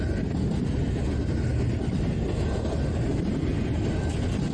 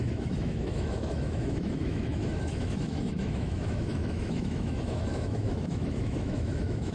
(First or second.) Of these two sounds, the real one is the first